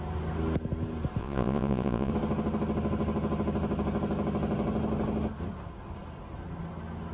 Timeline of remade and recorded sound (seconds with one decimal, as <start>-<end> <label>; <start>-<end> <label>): 0.0-1.2 recorded; 1.2-2.1 remade; 2.1-7.1 recorded